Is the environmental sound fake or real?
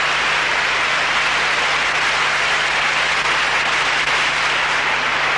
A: real